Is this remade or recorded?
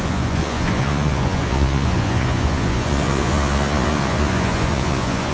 remade